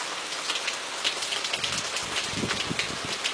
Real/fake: real